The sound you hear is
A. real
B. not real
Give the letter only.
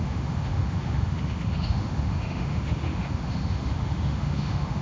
B